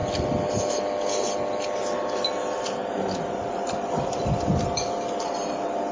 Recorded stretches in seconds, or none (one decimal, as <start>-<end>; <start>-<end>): 0.0-5.9